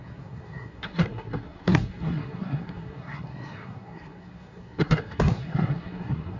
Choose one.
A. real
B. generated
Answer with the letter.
B